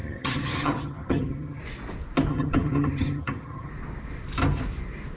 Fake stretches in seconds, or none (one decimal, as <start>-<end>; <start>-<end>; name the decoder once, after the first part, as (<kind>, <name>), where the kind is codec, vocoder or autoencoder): 0.0-1.6 (vocoder, HiFi-GAN); 2.3-3.7